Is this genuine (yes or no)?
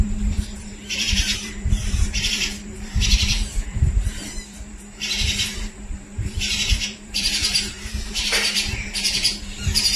no